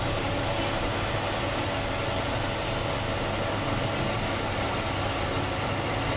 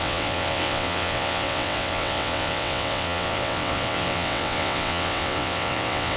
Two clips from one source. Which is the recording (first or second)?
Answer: first